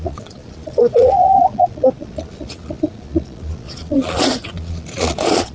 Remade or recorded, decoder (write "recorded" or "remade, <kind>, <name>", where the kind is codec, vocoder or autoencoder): remade, vocoder, Vocos